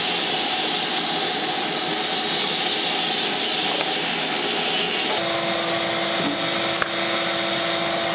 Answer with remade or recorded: recorded